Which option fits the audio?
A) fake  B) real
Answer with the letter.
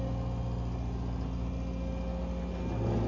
B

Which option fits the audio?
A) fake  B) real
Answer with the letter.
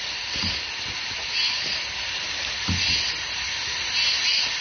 B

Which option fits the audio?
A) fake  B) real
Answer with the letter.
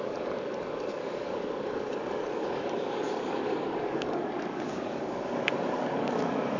A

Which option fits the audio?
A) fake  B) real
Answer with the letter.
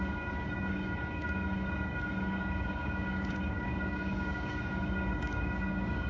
A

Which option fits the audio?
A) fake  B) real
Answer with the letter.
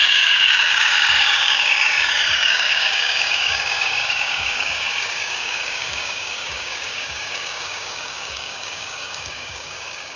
A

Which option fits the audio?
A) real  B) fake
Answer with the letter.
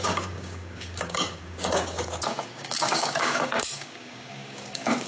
B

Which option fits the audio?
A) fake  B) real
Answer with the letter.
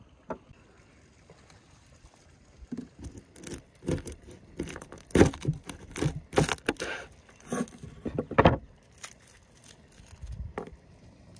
B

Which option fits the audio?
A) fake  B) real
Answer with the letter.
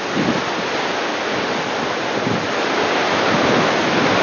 B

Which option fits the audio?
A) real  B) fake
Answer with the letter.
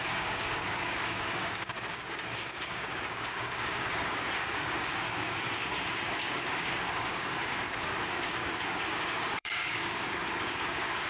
B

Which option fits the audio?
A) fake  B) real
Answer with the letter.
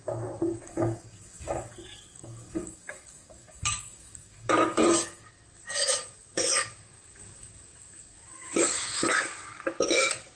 A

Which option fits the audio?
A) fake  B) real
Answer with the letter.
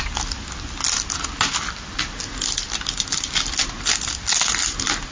B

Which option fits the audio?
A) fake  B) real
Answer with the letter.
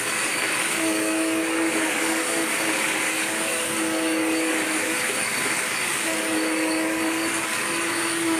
A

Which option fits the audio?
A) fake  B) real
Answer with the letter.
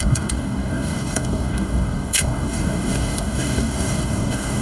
A